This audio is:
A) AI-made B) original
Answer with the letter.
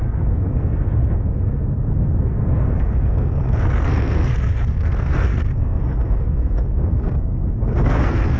A